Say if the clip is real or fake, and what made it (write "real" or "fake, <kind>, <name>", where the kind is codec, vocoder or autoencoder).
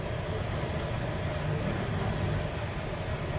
real